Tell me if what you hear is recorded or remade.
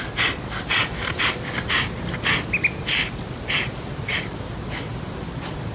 recorded